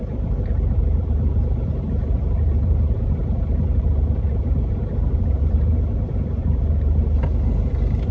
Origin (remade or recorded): remade